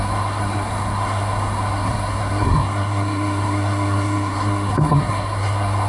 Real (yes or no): no